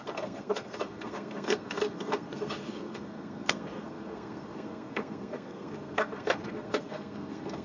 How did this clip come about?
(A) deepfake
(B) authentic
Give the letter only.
A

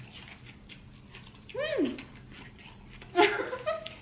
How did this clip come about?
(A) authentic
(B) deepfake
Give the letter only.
A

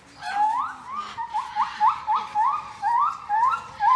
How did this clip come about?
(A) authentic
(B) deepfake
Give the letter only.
A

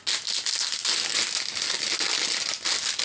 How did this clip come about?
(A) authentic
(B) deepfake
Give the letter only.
A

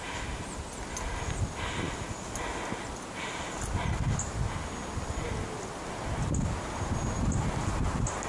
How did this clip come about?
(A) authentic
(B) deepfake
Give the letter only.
A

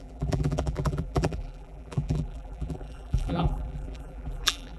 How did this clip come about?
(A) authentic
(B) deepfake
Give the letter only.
B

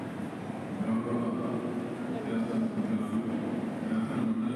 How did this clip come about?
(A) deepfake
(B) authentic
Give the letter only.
B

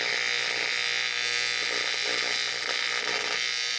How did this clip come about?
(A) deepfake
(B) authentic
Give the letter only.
B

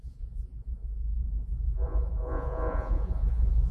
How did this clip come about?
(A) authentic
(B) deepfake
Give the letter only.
B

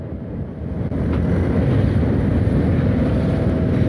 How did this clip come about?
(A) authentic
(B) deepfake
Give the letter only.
A